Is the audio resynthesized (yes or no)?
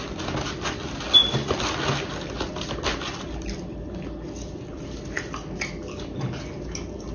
no